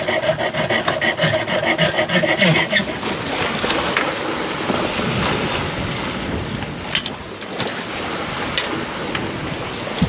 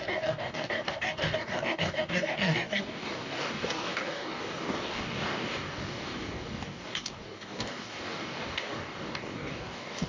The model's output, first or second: second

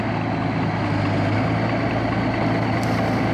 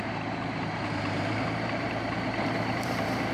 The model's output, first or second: second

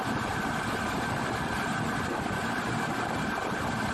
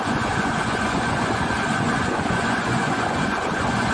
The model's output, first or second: second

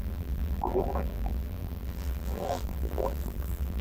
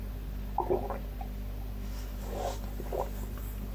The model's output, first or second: first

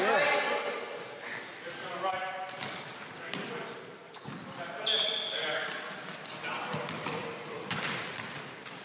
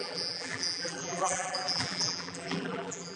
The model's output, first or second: second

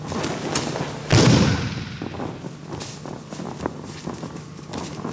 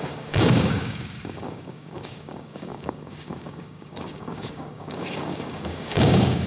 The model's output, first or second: second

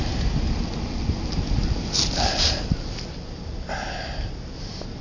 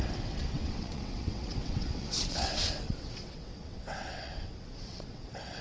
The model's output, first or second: second